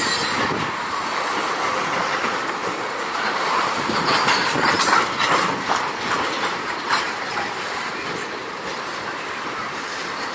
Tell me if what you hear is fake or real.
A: fake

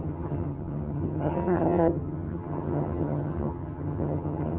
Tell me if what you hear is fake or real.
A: fake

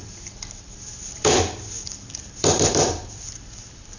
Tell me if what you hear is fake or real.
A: fake